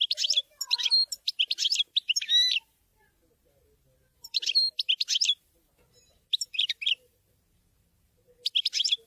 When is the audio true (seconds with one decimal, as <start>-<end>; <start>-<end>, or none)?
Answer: 0.0-9.1